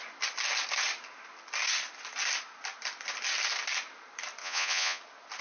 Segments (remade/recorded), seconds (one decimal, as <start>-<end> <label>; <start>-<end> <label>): 0.0-4.4 recorded; 4.4-5.0 remade; 5.0-5.4 recorded